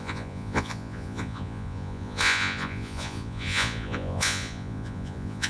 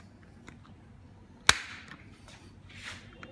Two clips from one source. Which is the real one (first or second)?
second